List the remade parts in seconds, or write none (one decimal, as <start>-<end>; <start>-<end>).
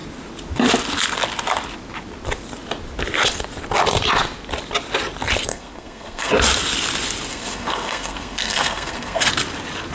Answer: 5.5-6.3; 7.3-9.2